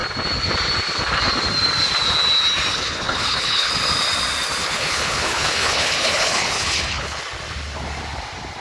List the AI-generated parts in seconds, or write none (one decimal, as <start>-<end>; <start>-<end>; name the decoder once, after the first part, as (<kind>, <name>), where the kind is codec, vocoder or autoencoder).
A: 2.7-3.7 (codec, HILCodec); 4.6-7.2